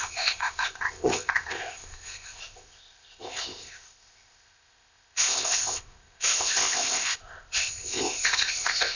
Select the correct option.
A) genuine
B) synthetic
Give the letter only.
B